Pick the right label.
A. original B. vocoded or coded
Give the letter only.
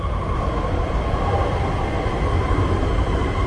A